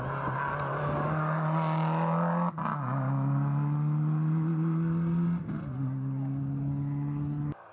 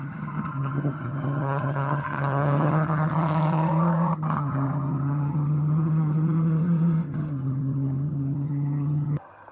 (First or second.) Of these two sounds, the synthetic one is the second